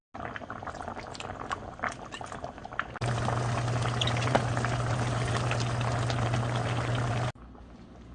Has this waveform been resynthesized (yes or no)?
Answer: no